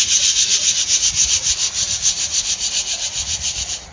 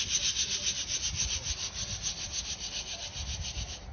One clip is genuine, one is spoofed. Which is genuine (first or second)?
second